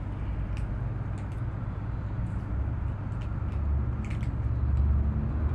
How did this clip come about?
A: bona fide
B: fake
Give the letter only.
A